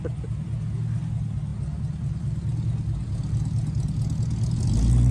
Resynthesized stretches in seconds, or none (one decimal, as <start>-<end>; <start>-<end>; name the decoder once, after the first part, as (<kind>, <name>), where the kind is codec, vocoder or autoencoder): none